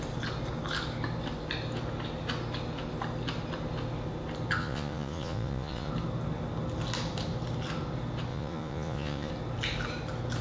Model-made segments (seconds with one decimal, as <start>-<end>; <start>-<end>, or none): 4.6-5.9; 8.3-9.3